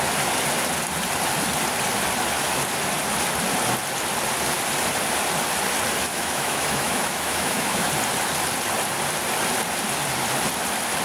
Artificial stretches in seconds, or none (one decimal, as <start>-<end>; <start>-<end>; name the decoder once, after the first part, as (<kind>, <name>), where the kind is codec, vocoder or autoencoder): 6.1-7.9 (autoencoder, DAC-VAE)